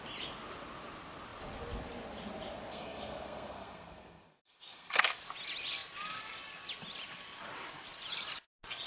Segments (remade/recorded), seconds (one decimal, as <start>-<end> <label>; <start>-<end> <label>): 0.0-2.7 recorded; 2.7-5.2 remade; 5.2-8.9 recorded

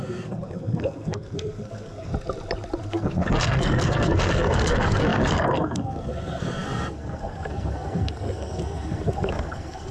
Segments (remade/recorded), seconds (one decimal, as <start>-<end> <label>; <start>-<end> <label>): 0.0-2.1 remade; 2.1-2.8 recorded; 2.8-9.9 remade

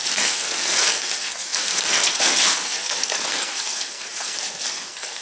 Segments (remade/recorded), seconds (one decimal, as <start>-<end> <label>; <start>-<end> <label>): 0.0-5.2 remade

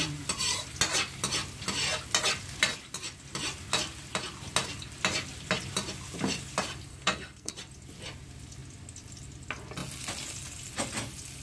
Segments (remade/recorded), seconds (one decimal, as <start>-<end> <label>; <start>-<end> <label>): 0.0-6.9 recorded; 6.9-7.5 remade; 7.5-11.4 recorded

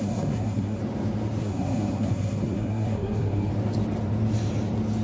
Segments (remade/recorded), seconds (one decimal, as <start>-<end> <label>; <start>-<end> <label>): 0.0-0.8 remade; 0.8-1.4 recorded; 1.4-3.5 remade; 3.5-5.0 recorded

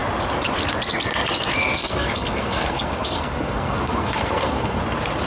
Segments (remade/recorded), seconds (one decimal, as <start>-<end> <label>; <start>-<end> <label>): 0.0-1.6 recorded; 1.6-4.8 remade; 4.8-5.3 recorded

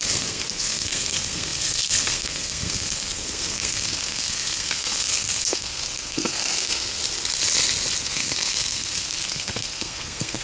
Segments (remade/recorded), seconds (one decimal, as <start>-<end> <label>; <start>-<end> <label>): 0.0-7.0 remade; 7.0-8.0 recorded; 8.0-10.4 remade